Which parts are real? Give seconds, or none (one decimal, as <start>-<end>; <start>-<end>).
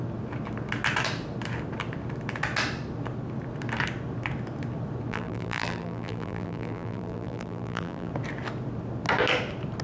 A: 0.0-5.1; 8.1-9.8